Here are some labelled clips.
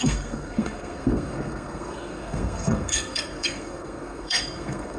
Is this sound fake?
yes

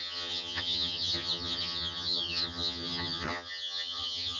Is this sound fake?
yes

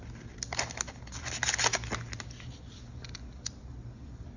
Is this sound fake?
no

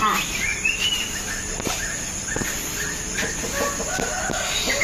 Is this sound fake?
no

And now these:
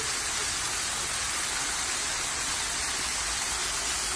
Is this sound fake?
no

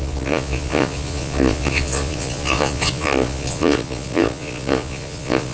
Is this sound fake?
yes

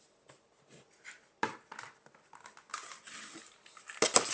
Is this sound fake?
no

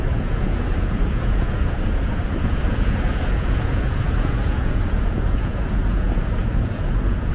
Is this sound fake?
yes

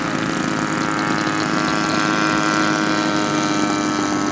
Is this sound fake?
no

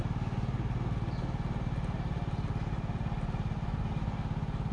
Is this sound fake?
no